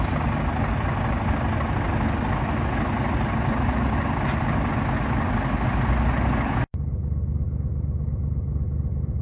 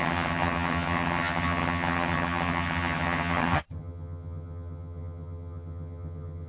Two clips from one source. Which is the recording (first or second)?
first